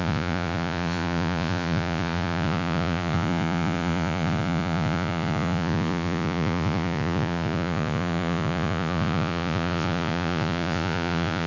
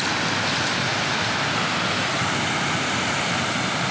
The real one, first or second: second